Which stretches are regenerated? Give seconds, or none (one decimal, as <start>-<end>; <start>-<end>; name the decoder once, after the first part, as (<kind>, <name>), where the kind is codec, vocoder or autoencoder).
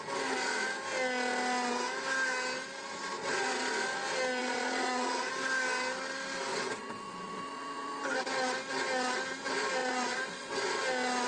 4.4-5.3 (vocoder, Vocos); 6.5-8.0; 9.8-10.5